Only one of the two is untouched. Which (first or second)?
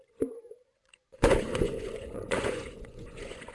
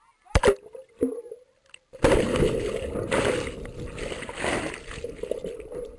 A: second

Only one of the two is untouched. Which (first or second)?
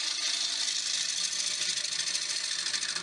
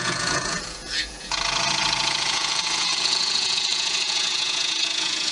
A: first